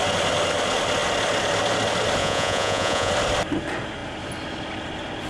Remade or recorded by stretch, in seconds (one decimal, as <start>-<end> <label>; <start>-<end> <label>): 0.0-2.2 recorded; 2.2-3.1 remade; 3.1-5.3 recorded